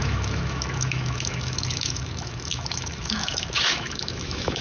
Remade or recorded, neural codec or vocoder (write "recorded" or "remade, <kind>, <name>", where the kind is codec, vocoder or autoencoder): remade, autoencoder, DAC-VAE